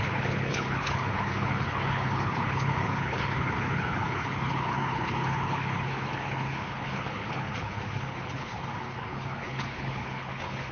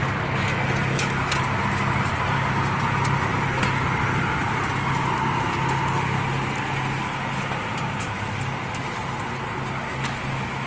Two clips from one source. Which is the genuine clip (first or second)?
second